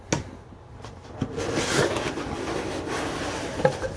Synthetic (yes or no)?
no